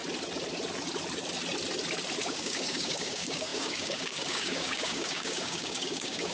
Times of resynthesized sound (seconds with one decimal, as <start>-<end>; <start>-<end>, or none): 2.2-6.3